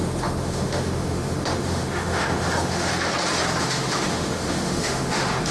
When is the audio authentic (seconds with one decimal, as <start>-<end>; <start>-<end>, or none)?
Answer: 2.9-3.6